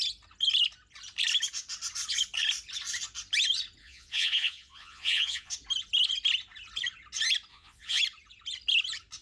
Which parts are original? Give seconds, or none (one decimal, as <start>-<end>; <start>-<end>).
0.0-3.8; 5.5-7.5; 8.0-9.2